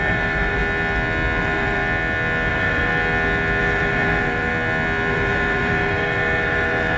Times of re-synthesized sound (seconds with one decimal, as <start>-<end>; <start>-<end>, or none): 0.0-0.6; 1.4-1.8; 2.5-2.9; 3.6-4.5; 5.1-7.0